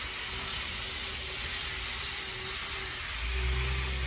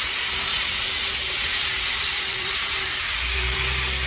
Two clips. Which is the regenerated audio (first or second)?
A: second